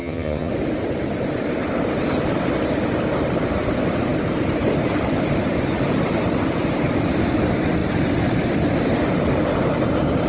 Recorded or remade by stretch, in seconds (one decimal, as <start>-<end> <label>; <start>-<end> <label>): 0.0-0.5 remade; 0.5-10.3 recorded